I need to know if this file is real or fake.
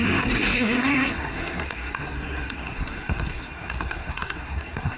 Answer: fake